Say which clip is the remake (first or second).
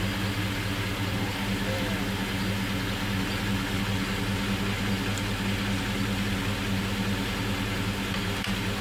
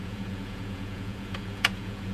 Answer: second